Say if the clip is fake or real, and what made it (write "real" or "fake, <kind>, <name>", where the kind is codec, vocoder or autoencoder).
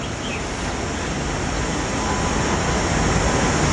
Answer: real